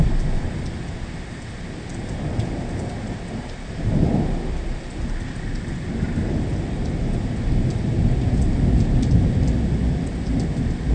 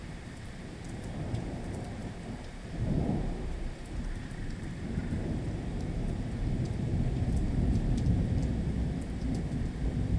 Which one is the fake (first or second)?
second